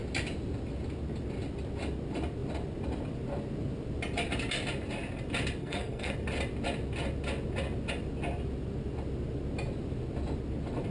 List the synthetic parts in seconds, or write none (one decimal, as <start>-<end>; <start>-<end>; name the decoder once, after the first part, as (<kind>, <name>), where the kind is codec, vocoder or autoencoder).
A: 5.6-6.1 (codec, SNAC)